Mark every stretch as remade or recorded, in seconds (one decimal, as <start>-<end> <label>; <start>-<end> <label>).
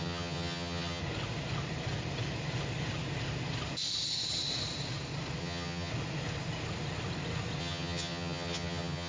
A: 0.0-1.0 remade; 1.0-5.4 recorded; 5.4-5.9 remade; 5.9-7.6 recorded; 7.6-9.1 remade